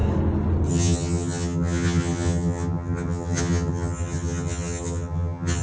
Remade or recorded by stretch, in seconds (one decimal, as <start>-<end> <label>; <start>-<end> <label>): 0.0-0.7 recorded; 0.7-5.6 remade